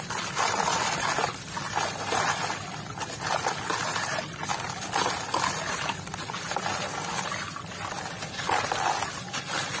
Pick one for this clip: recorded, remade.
recorded